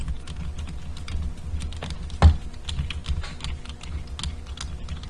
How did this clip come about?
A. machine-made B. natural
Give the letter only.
B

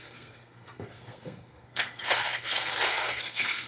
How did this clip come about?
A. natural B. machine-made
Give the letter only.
B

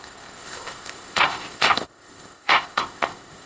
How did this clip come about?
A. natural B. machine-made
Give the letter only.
B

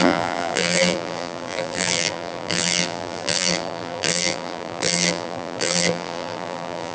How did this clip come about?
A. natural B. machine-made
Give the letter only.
B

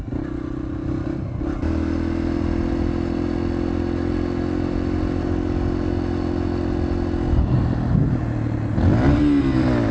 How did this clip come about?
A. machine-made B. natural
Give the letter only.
B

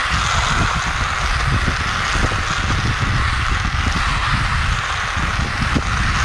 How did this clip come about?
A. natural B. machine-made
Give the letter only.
A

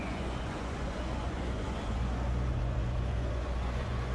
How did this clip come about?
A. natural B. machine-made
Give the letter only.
B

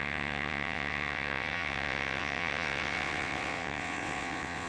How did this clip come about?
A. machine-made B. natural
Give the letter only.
A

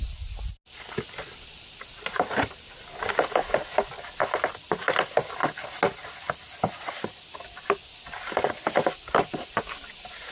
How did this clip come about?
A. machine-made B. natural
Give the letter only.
B